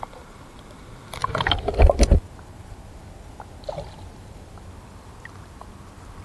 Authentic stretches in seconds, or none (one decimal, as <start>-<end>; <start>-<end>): 0.0-6.2